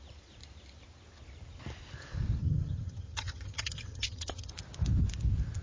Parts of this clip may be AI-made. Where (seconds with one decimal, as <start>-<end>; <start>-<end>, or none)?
2.4-4.5